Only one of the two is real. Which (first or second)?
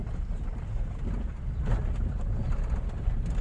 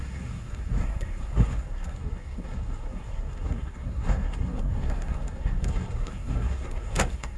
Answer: first